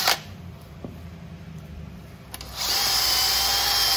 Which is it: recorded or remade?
recorded